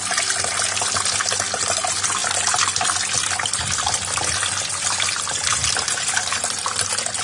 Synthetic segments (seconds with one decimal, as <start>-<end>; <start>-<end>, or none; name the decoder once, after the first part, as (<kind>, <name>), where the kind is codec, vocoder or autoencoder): 5.5-6.8 (vocoder, BigVGAN v2)